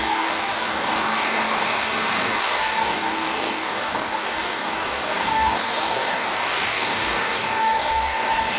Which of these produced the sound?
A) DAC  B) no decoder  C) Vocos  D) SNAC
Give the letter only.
A